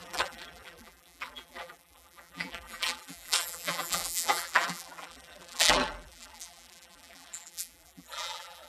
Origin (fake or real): fake